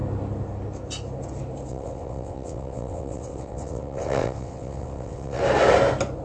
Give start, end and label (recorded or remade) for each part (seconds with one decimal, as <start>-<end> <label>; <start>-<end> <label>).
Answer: 0.0-1.7 recorded; 1.7-5.4 remade; 5.4-6.2 recorded